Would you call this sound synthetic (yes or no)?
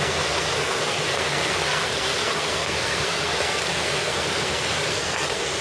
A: yes